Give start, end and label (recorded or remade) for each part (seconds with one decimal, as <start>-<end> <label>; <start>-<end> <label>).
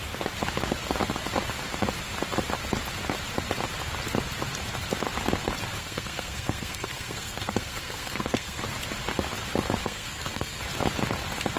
0.0-5.8 recorded; 5.8-8.6 remade; 8.6-9.8 recorded; 9.8-10.6 remade; 10.6-11.6 recorded